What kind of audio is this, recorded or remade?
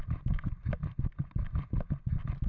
recorded